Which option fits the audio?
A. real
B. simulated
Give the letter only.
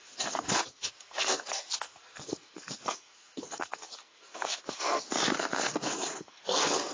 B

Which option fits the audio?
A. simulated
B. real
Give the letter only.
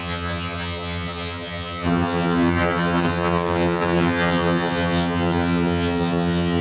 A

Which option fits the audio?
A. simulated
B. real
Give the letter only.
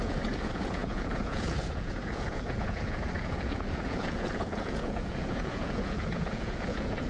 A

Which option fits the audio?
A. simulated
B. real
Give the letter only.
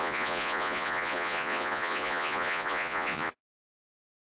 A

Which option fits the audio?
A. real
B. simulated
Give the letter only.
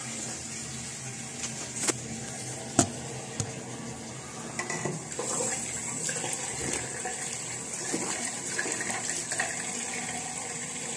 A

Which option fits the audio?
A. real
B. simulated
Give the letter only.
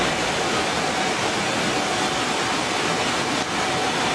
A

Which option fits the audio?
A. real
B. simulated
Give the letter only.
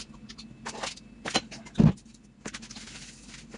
A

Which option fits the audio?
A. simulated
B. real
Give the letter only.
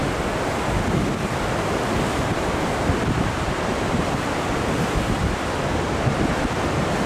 B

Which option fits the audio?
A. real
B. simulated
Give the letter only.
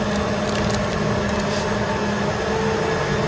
A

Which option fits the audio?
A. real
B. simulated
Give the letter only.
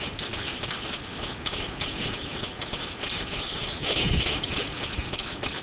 A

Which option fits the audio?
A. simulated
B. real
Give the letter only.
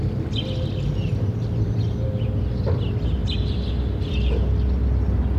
B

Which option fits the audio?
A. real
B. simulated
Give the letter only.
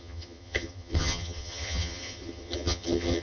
B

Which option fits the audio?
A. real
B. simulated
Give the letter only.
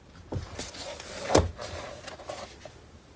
A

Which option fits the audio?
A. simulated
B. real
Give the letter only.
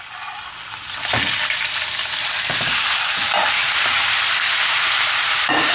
B